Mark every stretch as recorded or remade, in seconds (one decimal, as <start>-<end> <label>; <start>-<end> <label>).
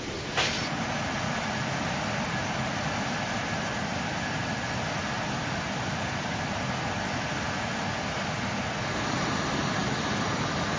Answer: 0.0-10.8 recorded